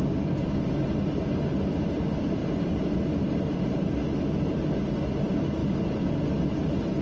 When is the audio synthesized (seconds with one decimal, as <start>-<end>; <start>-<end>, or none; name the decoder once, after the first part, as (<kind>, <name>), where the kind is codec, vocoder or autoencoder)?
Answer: none

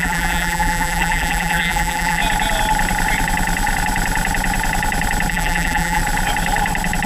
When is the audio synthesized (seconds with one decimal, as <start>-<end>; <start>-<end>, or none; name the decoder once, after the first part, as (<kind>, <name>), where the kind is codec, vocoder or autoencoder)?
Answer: 0.0-2.2 (vocoder, BigVGAN v2); 5.3-6.0

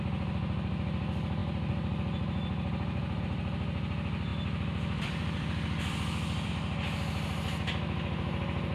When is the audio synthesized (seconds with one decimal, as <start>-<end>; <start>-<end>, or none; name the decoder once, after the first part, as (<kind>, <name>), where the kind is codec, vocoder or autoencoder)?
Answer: 4.3-6.5 (vocoder, BigVGAN v2)

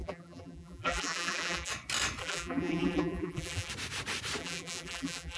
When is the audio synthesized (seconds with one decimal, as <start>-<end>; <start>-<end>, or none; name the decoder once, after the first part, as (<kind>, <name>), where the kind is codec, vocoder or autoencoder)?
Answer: 0.0-1.7 (vocoder, BigVGAN v2); 2.2-3.7; 4.4-5.4

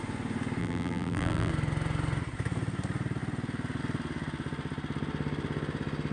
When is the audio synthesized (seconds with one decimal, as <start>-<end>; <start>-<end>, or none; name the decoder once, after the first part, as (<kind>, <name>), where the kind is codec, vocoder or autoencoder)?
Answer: 0.6-1.5 (vocoder, BigVGAN v2)